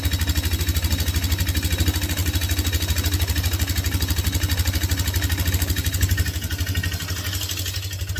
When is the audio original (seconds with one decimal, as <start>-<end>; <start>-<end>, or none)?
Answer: 0.0-8.2